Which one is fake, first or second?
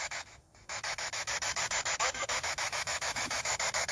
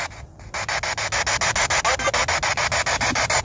first